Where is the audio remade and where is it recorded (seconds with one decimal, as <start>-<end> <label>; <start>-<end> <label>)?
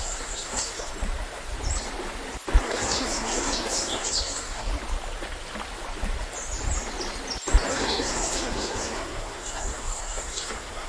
0.0-0.9 remade; 0.9-2.6 recorded; 2.6-4.7 remade; 4.7-7.7 recorded; 7.7-10.9 remade